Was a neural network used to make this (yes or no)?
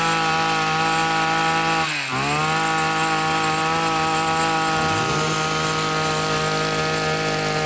no